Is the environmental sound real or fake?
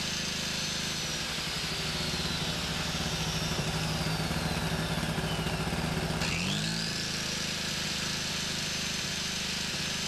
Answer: real